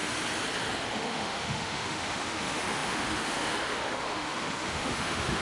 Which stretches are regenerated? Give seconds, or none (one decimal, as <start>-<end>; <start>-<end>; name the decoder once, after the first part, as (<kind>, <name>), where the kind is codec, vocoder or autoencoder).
0.9-5.4 (autoencoder, DAC-VAE)